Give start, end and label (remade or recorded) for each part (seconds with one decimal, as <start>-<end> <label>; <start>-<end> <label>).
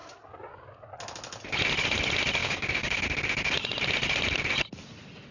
0.0-2.4 recorded; 2.4-3.0 remade; 3.0-5.3 recorded